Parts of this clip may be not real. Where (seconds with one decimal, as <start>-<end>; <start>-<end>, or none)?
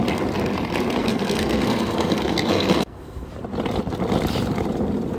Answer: 1.0-3.3